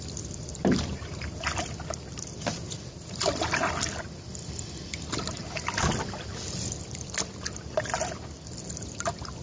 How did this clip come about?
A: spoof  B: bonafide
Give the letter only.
A